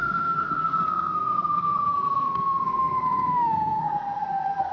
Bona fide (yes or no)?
no